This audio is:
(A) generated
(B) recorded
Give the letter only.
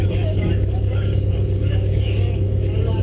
A